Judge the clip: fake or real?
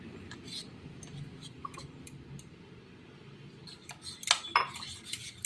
real